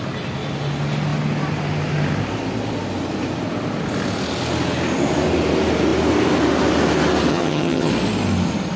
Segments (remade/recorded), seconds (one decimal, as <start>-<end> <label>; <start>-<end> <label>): 0.0-7.3 recorded; 7.3-7.9 remade; 7.9-8.8 recorded